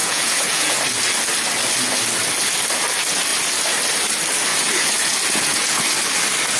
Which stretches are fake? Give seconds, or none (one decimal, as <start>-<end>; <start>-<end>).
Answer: 0.0-0.8; 4.5-5.8